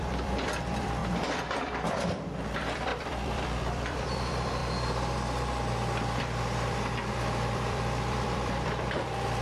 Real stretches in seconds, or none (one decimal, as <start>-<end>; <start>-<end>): 4.6-6.2